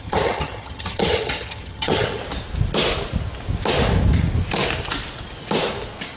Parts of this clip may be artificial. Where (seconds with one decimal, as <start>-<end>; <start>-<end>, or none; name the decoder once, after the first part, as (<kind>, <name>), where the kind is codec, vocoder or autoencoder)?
0.0-2.2 (vocoder, HiFi-GAN)